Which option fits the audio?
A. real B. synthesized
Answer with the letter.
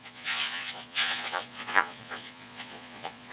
B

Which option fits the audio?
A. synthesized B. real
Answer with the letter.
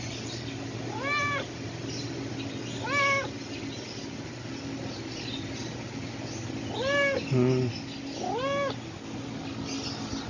B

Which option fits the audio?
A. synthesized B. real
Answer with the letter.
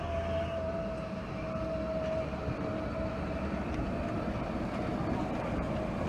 B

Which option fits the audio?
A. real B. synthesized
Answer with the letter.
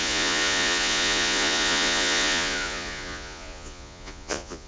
B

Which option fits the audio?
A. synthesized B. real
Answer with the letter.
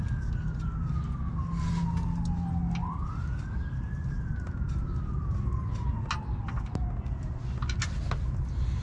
B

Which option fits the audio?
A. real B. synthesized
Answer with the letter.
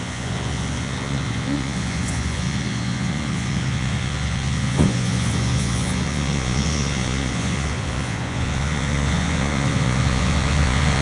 B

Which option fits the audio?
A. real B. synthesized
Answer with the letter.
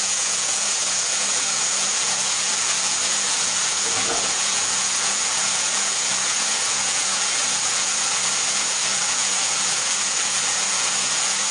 B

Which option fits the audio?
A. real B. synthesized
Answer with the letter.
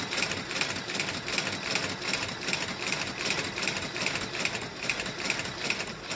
A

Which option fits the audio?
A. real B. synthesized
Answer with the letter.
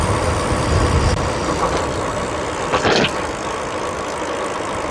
A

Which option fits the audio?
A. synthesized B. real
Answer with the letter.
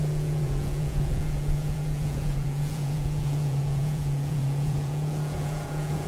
A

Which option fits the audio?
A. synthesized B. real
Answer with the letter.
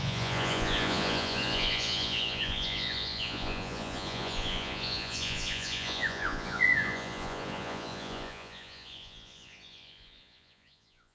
A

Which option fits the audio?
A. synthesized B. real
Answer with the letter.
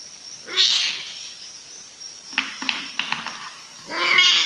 B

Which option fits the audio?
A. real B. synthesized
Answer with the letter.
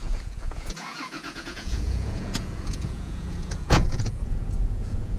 B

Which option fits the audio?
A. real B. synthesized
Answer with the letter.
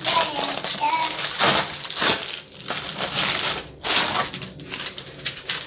A